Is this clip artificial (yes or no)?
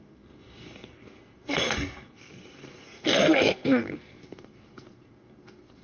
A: yes